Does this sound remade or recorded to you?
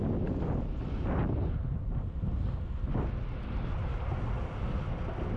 recorded